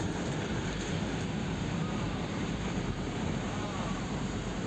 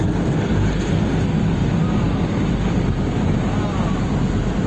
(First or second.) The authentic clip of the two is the second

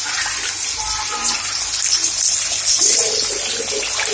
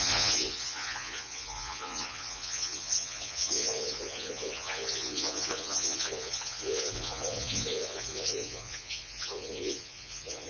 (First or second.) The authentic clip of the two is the first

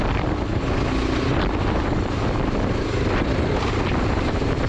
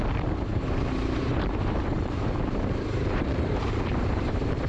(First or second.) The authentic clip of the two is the first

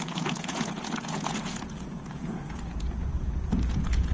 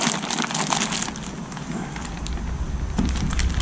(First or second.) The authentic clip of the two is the second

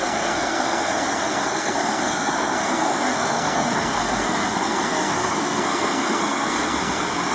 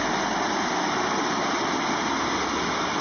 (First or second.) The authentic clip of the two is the second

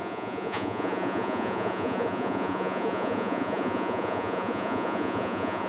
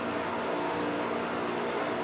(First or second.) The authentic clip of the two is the second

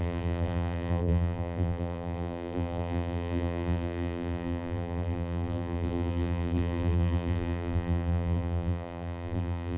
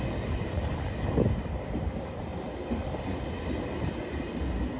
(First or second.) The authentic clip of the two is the second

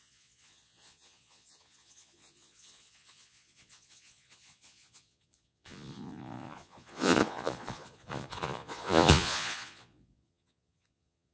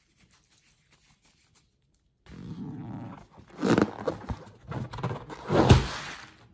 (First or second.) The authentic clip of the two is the second